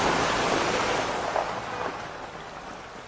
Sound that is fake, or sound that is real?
real